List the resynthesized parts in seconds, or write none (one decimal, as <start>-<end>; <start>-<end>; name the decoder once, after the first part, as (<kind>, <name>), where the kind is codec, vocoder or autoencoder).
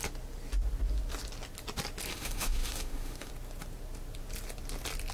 2.1-3.3 (autoencoder, DAC-VAE)